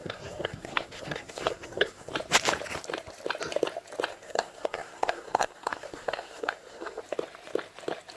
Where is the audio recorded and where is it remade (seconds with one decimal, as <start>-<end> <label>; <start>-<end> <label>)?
0.0-2.1 remade; 2.1-4.1 recorded; 4.1-7.0 remade; 7.0-8.2 recorded